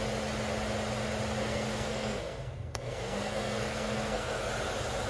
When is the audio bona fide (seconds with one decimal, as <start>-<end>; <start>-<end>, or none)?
0.0-1.4; 4.5-5.1